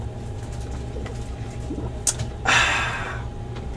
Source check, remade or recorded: recorded